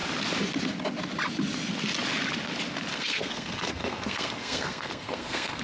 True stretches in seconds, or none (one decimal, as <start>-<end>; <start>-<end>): 0.0-2.9